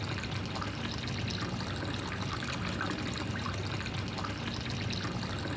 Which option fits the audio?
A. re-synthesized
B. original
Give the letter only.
B